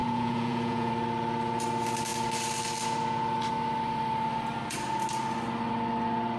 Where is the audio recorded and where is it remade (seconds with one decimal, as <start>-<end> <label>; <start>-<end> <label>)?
0.0-0.9 remade; 0.9-6.4 recorded